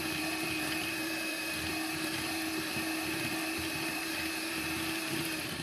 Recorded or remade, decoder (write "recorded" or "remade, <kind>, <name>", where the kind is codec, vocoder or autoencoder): remade, vocoder, BigVGAN v2